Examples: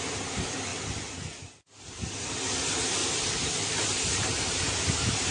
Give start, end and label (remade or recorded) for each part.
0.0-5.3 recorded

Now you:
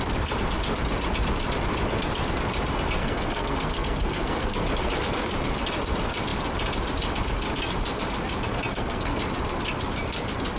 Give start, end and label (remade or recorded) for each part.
0.0-3.0 recorded; 3.0-4.9 remade; 4.9-8.7 recorded; 8.7-9.2 remade; 9.2-10.6 recorded

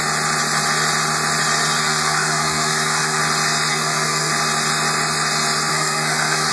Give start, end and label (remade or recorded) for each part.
0.0-1.8 recorded; 1.8-3.2 remade; 3.2-3.7 recorded; 3.7-4.3 remade; 4.3-5.7 recorded; 5.7-6.5 remade

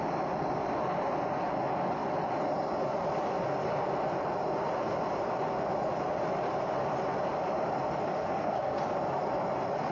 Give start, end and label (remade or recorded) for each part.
0.0-8.2 recorded; 8.2-8.8 remade; 8.8-9.9 recorded

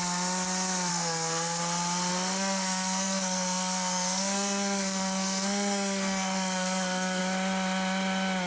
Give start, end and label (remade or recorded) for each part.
0.0-0.9 recorded; 0.9-1.6 remade; 1.6-2.1 recorded; 2.1-7.2 remade; 7.2-8.5 recorded

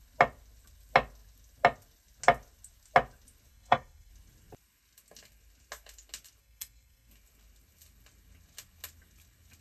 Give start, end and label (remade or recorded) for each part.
0.0-3.5 recorded; 3.5-4.1 remade; 4.1-6.4 recorded; 6.4-7.1 remade; 7.1-9.6 recorded